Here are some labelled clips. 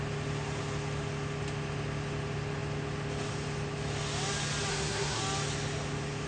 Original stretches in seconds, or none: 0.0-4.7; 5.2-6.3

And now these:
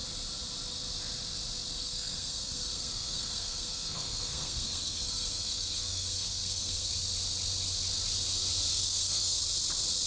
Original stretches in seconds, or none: 0.0-1.7; 6.9-8.7; 9.4-10.1

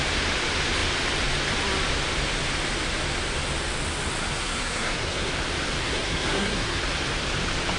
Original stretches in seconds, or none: 0.0-4.2; 5.3-5.8; 6.8-7.8

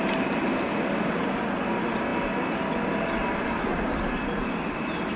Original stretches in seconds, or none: 0.0-5.2

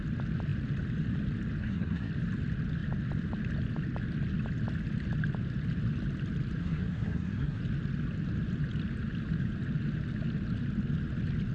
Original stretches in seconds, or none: 0.0-1.6; 2.1-6.6; 7.6-11.5

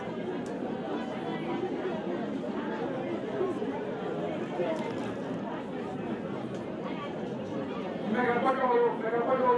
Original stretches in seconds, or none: 0.0-9.6